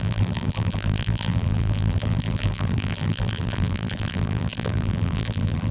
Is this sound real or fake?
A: fake